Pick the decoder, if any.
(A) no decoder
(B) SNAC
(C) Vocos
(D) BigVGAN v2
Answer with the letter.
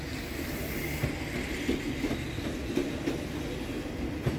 A